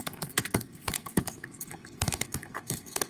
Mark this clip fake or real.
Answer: fake